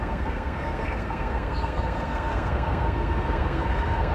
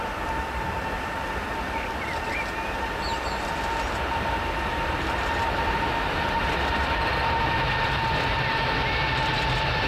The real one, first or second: second